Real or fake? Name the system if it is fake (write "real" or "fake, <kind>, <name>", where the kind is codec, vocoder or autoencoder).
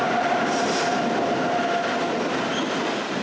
real